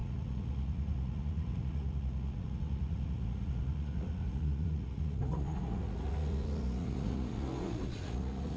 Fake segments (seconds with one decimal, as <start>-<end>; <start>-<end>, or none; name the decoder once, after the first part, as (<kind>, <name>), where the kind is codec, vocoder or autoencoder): 0.0-8.6 (vocoder, Vocos)